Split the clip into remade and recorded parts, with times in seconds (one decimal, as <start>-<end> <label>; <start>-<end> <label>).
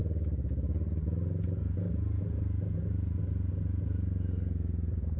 0.0-5.2 recorded